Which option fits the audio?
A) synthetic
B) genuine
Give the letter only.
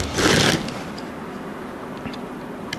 A